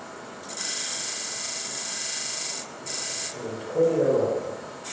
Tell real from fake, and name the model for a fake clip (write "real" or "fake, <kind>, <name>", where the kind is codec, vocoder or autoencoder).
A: real